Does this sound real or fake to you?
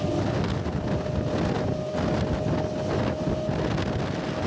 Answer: real